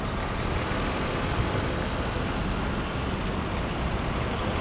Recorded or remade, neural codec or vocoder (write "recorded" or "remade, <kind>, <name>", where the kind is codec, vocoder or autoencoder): recorded